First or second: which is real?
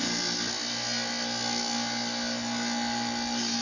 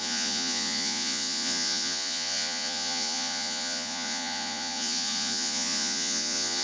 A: first